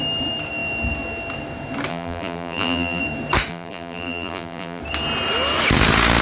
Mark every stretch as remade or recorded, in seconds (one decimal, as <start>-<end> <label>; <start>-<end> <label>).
0.0-1.9 recorded; 1.9-3.0 remade; 3.0-3.5 recorded; 3.5-4.8 remade; 4.8-6.2 recorded